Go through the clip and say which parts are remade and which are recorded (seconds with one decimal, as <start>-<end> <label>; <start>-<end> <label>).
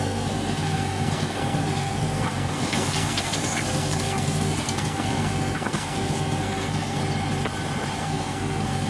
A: 0.0-7.0 remade; 7.0-8.0 recorded; 8.0-8.9 remade